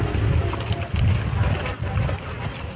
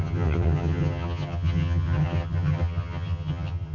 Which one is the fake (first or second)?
second